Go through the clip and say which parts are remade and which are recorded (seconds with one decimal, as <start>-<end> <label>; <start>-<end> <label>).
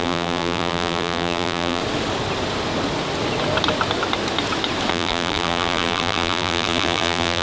0.0-1.8 remade; 1.8-4.9 recorded; 4.9-7.4 remade